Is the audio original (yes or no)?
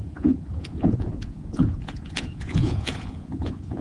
no